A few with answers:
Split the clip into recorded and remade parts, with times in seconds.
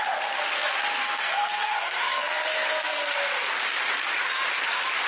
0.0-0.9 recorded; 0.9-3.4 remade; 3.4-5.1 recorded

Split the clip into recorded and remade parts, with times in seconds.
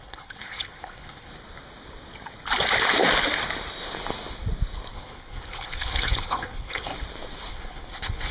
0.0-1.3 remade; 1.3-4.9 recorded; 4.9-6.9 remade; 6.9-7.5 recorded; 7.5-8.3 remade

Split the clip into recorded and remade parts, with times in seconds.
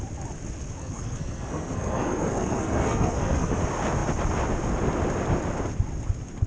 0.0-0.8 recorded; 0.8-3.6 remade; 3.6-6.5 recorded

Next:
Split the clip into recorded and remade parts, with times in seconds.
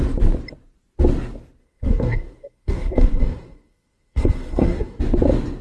0.0-1.6 recorded; 1.6-5.0 remade; 5.0-5.6 recorded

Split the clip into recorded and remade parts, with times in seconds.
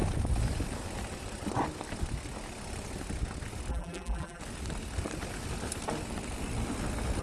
0.0-3.7 recorded; 3.7-4.4 remade; 4.4-7.2 recorded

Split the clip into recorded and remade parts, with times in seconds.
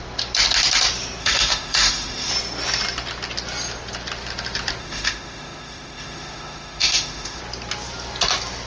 0.0-1.2 recorded; 1.2-2.3 remade; 2.3-4.8 recorded; 4.8-7.4 remade; 7.4-8.7 recorded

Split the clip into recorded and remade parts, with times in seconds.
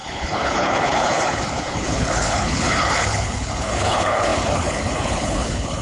0.0-5.8 remade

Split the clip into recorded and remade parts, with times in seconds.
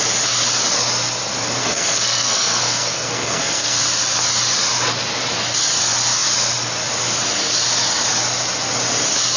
0.0-1.6 recorded; 1.6-3.8 remade; 3.8-9.4 recorded